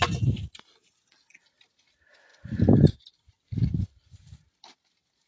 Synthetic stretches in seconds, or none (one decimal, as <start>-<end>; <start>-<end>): none